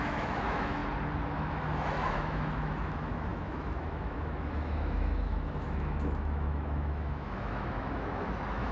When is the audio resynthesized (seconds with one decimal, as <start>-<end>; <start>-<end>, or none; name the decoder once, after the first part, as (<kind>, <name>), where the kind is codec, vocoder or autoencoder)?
0.0-0.8 (autoencoder, DAC-VAE); 1.3-8.7